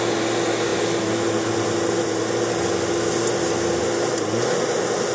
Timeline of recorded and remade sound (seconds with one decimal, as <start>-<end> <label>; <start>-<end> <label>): 0.0-5.1 recorded

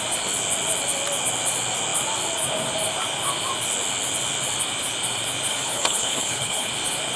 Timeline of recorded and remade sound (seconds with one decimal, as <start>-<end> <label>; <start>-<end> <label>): 0.0-5.5 recorded; 5.5-6.7 remade; 6.7-7.2 recorded

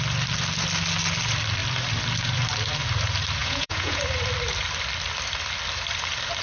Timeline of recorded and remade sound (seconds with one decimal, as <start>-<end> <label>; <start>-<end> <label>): 0.0-3.4 recorded; 3.4-4.0 remade; 4.0-6.4 recorded

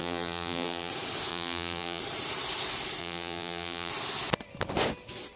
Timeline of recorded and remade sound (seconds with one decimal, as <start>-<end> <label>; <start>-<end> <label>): 0.0-0.9 remade; 0.9-1.3 recorded; 1.3-2.0 remade; 2.0-3.0 recorded; 3.0-3.9 remade; 3.9-5.4 recorded

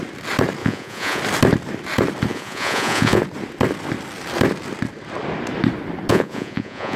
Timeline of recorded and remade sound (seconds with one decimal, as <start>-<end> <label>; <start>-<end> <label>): 0.0-0.6 recorded; 0.6-1.2 remade; 1.2-2.3 recorded; 2.3-3.2 remade; 3.2-6.1 recorded; 6.1-7.0 remade